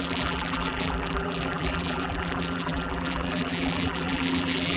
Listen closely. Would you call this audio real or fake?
fake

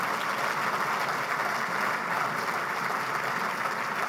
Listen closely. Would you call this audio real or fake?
real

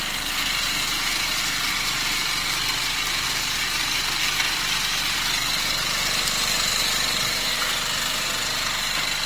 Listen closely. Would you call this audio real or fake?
fake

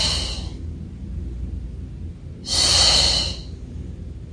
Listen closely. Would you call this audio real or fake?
real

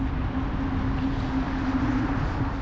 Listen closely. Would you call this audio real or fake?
real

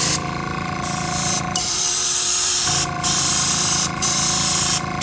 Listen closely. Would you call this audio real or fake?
fake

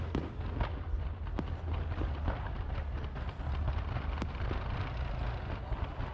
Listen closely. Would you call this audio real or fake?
real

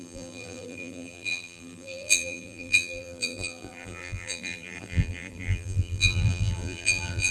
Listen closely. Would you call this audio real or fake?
fake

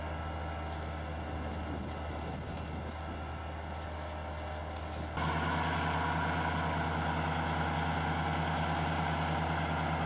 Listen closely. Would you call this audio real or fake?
real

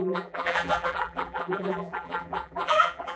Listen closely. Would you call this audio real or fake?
fake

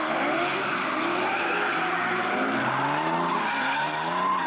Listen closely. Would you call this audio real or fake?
real